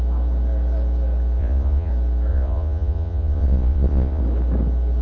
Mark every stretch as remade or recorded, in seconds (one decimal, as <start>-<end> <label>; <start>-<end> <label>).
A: 0.0-1.4 recorded; 1.4-1.9 remade; 1.9-2.3 recorded; 2.3-4.2 remade; 4.2-5.0 recorded